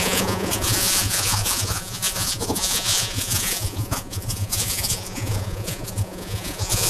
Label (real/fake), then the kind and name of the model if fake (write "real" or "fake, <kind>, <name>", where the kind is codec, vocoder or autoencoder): fake, vocoder, Vocos